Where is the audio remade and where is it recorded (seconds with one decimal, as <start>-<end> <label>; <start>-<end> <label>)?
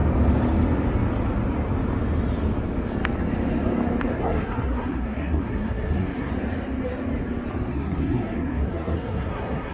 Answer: 0.0-4.2 recorded; 4.2-6.3 remade; 6.3-7.7 recorded; 7.7-9.7 remade